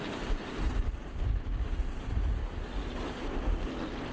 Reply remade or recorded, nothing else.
recorded